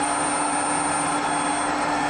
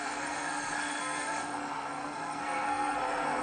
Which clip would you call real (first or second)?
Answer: first